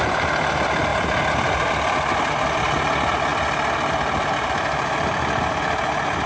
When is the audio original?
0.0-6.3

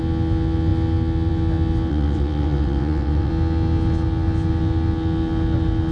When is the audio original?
0.0-1.9; 3.3-5.9

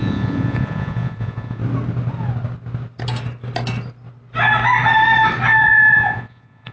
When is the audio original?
1.6-5.6

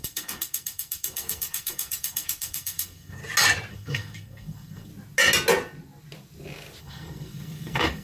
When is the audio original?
3.2-3.7; 4.9-6.8

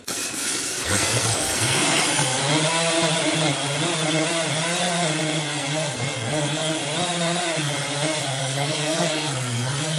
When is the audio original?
2.4-5.4; 6.8-8.4

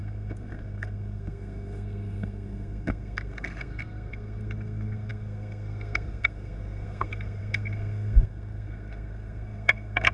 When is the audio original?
none